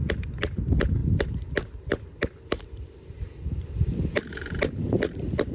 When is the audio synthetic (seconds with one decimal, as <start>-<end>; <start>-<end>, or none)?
none